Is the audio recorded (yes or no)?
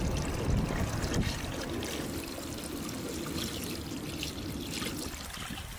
yes